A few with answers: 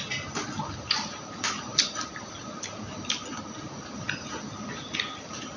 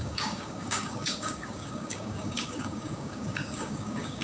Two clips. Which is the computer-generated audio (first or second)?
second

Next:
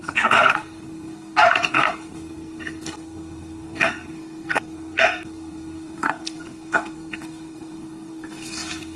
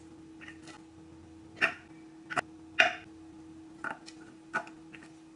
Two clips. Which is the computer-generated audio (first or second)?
first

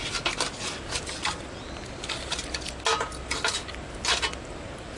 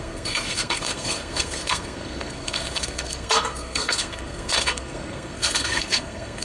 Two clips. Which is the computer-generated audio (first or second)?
second